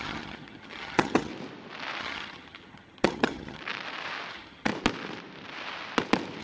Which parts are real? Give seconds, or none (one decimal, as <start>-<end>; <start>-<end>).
1.3-2.0; 3.6-4.3; 4.7-6.4